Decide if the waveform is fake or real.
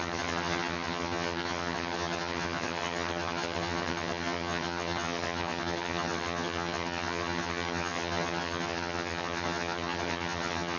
fake